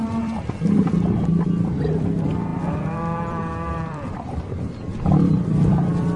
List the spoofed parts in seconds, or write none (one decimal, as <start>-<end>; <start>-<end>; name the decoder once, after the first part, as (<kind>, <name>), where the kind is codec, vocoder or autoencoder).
0.0-6.2 (vocoder, BigVGAN v2)